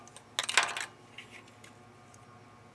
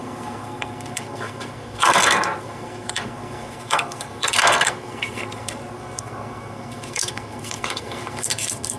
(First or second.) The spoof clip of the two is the second